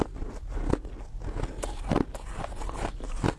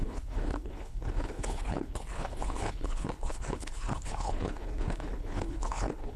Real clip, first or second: first